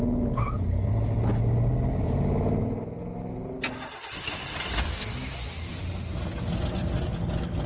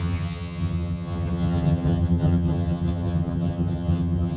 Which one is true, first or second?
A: first